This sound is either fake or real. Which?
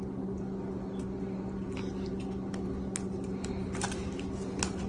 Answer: real